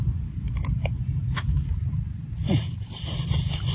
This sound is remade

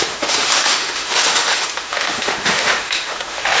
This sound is remade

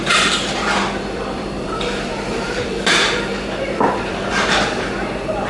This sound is remade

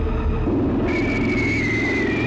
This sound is recorded